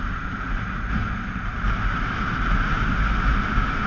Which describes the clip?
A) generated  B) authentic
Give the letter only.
A